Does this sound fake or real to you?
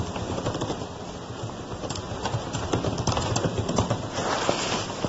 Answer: real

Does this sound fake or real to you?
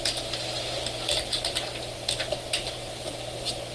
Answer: real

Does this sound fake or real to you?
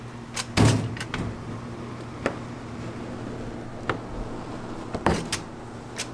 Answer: real